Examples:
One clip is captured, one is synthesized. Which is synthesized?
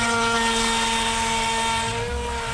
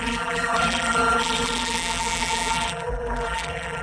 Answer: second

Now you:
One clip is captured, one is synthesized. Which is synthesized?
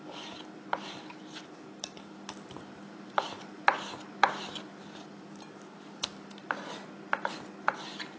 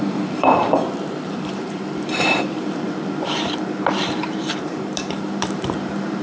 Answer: second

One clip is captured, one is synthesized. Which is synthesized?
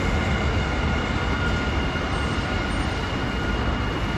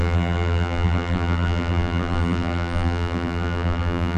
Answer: second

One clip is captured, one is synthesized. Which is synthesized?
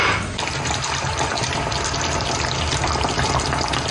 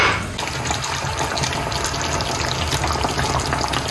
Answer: first